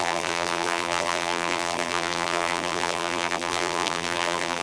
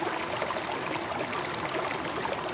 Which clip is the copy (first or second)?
first